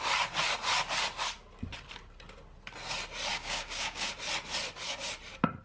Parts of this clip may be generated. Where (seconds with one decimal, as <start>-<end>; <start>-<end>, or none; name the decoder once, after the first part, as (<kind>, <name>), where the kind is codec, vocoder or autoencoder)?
3.3-4.1 (codec, DAC)